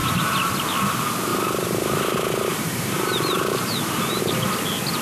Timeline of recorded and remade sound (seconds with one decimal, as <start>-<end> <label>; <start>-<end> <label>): 0.0-0.6 remade; 0.6-1.3 recorded; 1.3-4.2 remade; 4.2-5.0 recorded